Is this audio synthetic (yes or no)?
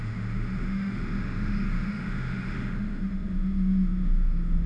yes